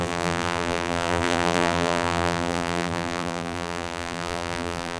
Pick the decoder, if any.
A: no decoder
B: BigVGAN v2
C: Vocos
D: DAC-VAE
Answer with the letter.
B